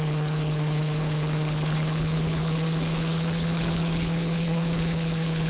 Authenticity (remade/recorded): remade